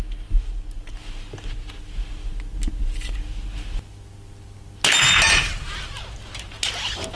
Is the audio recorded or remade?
recorded